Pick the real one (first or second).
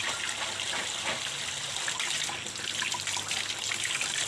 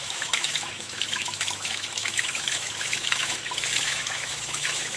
first